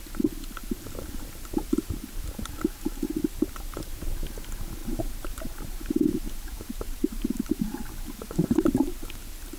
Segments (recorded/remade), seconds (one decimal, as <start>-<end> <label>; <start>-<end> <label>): 0.0-0.6 recorded; 0.6-1.9 remade; 1.9-4.8 recorded; 4.8-9.0 remade; 9.0-9.6 recorded